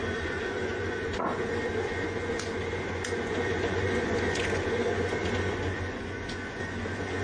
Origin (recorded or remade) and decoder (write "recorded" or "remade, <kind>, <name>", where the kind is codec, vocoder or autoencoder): remade, vocoder, Vocos